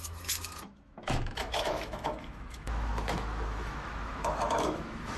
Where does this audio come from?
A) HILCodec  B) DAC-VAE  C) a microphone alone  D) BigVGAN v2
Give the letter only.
B